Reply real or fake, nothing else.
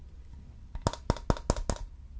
real